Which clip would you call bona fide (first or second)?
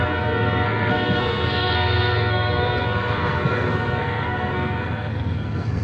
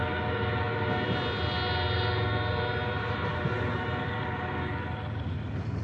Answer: second